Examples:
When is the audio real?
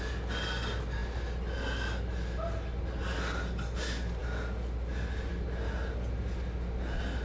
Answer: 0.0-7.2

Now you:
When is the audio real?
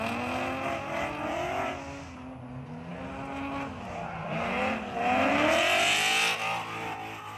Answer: 0.0-7.4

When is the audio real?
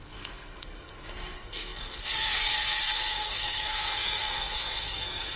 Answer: none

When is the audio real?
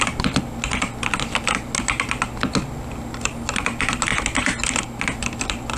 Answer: 0.0-5.8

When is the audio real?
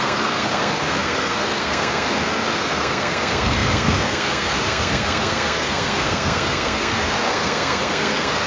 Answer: none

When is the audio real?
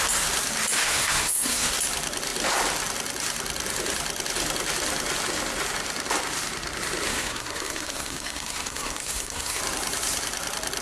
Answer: 0.0-0.8; 1.7-7.1; 9.6-10.8